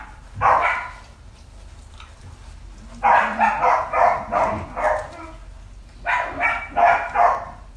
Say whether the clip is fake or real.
real